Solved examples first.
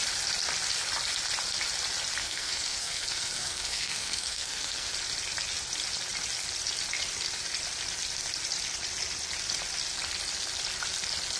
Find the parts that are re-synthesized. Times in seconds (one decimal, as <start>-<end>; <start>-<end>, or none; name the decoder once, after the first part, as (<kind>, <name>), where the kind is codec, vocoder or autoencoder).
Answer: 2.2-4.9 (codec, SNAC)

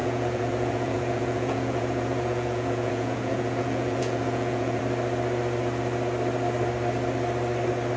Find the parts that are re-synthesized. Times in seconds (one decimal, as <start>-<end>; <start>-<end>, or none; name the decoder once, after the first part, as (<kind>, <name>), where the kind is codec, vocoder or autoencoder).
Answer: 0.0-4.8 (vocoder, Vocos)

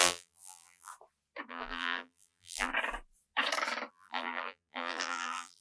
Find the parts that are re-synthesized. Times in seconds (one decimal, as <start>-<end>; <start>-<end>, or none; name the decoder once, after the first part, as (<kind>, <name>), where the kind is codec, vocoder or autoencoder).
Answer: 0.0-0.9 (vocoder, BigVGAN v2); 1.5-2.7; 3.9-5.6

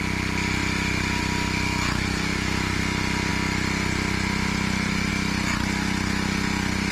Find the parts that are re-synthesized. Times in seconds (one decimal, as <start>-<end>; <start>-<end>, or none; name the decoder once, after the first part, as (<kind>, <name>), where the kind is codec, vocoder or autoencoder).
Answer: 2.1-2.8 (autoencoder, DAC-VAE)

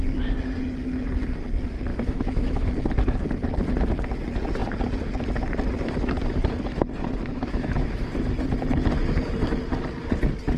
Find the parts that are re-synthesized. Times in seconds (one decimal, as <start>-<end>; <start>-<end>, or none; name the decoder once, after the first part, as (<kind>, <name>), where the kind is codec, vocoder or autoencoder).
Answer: 1.9-2.7 (autoencoder, DAC-VAE); 7.3-8.1

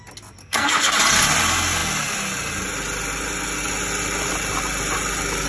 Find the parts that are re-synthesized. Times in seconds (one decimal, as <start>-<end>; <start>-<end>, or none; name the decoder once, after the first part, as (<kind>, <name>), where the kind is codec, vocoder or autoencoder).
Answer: 0.4-0.9 (codec, SNAC)